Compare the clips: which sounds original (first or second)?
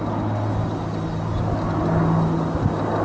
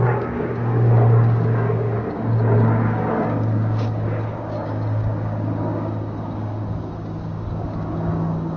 first